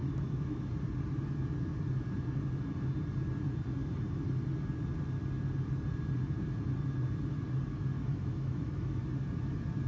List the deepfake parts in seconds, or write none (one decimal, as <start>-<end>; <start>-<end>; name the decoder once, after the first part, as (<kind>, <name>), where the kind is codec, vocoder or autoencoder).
0.0-0.7 (autoencoder, DAC-VAE); 7.7-9.0